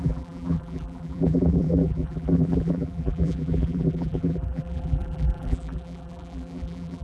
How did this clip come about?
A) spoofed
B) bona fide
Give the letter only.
A